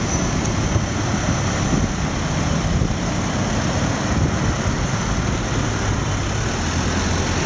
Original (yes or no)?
yes